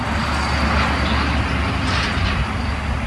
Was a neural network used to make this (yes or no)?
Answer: no